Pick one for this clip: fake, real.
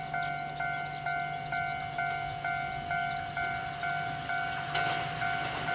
real